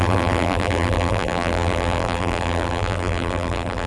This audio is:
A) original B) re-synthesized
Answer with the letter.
B